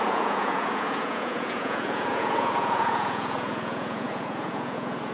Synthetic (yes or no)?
yes